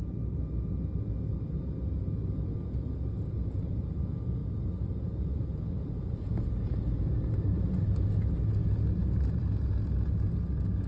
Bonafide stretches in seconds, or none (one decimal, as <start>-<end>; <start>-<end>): 0.0-4.4; 5.6-8.6; 9.7-10.9